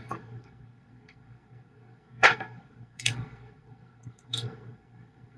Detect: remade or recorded remade